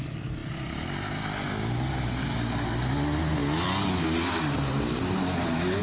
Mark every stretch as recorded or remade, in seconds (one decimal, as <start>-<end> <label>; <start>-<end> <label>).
0.0-5.8 recorded